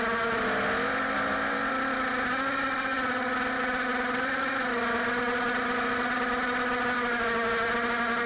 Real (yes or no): yes